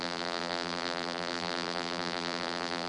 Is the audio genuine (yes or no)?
no